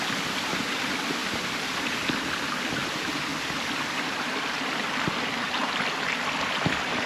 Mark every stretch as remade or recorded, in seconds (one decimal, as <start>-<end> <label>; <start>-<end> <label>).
0.0-7.1 recorded